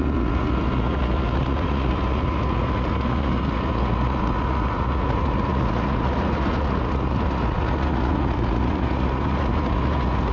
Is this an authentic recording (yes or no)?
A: no